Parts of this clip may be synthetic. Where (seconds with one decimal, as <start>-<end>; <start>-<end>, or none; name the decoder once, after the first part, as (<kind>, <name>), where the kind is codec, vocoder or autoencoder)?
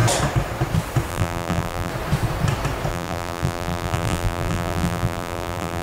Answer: 1.1-1.9 (vocoder, BigVGAN v2); 2.9-5.8